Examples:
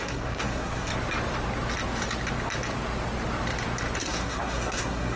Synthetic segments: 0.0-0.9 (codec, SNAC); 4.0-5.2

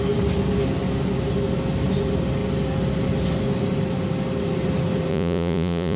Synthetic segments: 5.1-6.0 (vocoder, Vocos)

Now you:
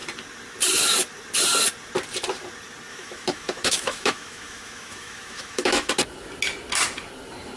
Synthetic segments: 2.9-5.9 (autoencoder, DAC-VAE)

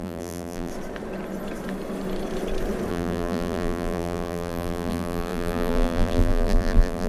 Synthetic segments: 0.0-0.7 (vocoder, BigVGAN v2); 2.9-7.1

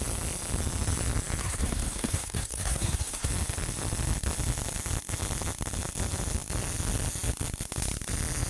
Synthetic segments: 1.4-3.3 (codec, SNAC)

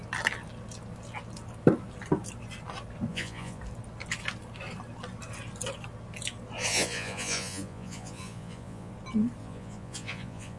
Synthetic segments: 3.1-3.6 (vocoder, Vocos); 6.7-8.9; 9.4-10.6

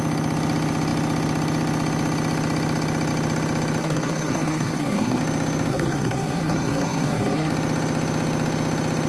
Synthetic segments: 3.8-5.2 (codec, SNAC); 5.7-7.5